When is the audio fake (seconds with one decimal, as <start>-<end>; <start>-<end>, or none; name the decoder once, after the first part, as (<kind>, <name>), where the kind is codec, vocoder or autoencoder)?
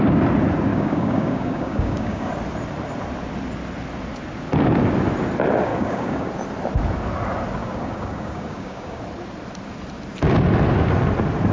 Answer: 0.7-2.3 (codec, DAC); 5.7-6.3; 7.6-9.0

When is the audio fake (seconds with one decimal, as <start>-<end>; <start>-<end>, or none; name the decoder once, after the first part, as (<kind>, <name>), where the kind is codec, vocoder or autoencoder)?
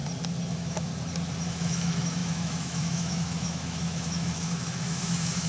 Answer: 0.5-0.9 (autoencoder, DAC-VAE); 1.5-5.5